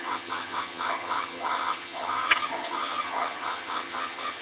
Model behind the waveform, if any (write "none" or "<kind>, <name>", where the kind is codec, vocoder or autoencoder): vocoder, HiFi-GAN